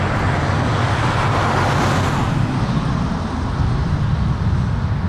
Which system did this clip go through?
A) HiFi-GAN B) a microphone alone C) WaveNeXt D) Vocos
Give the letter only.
B